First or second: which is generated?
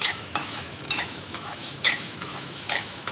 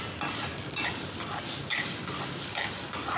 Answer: first